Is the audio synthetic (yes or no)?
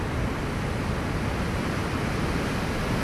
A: no